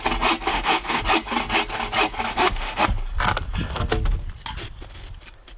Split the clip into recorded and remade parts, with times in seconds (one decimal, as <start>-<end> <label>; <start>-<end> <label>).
0.0-0.5 recorded; 0.5-1.0 remade; 1.0-2.3 recorded; 2.3-2.8 remade; 2.8-5.6 recorded